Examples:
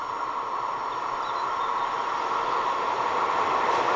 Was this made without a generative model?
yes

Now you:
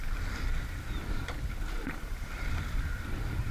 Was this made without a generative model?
yes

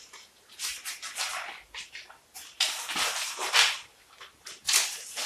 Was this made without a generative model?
yes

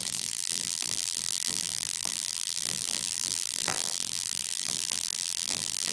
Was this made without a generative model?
no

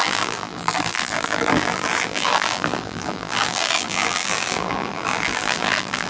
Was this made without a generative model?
no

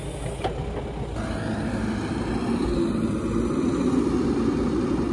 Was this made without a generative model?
yes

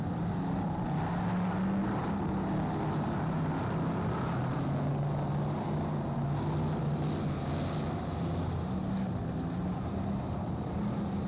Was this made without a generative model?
yes